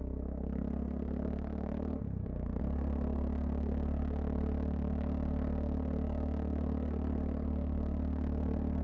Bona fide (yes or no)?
no